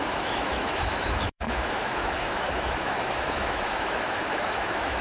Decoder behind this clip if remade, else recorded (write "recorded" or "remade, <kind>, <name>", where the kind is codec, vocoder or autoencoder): remade, autoencoder, DAC-VAE